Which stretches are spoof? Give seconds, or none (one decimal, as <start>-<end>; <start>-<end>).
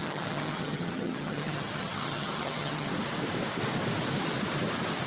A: 0.0-2.9